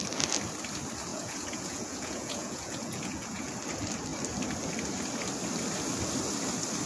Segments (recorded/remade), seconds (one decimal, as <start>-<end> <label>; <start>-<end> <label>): 0.0-1.1 recorded; 1.1-3.5 remade; 3.5-6.9 recorded